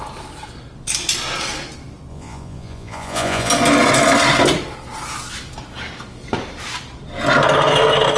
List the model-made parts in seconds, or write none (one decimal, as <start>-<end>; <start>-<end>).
2.1-3.5